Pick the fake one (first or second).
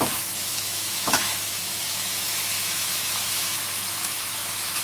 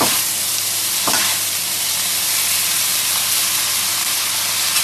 first